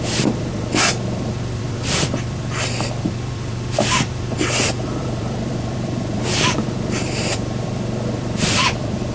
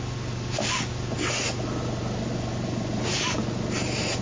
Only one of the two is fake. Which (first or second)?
first